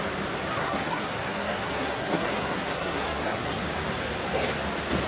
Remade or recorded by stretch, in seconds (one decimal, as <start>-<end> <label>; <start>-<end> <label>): 0.0-0.5 recorded; 0.5-3.6 remade; 3.6-5.1 recorded